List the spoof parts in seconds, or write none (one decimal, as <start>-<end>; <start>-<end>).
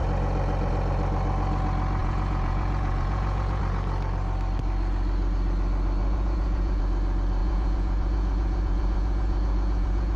2.0-3.6; 6.0-6.8; 7.4-10.2